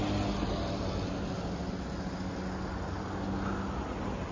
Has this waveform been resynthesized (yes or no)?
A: no